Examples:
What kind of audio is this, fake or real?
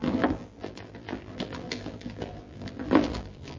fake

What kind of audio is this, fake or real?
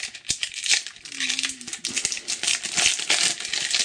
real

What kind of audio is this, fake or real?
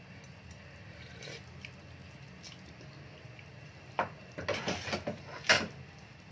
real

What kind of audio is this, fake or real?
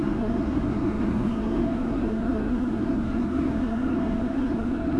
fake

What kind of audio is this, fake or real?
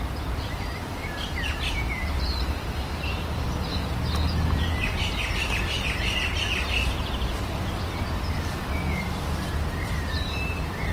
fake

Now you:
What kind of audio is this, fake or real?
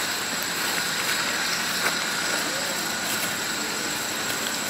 real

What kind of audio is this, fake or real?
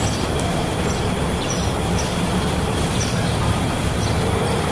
fake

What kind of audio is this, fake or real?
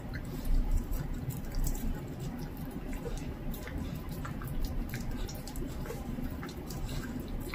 fake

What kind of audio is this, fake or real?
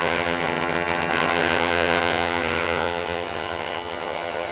fake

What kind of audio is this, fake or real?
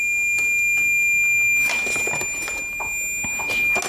real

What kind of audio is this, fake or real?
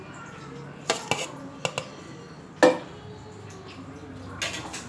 real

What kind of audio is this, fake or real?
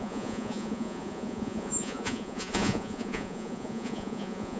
fake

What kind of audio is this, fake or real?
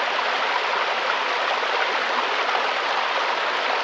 real